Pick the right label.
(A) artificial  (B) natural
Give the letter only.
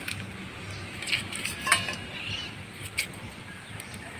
B